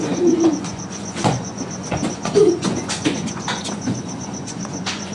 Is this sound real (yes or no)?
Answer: no